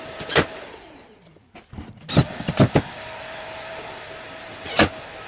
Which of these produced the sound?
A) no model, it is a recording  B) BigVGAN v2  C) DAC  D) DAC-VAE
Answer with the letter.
A